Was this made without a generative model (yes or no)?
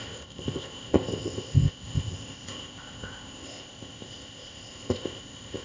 no